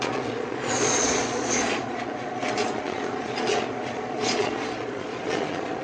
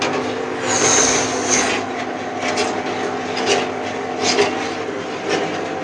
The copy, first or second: first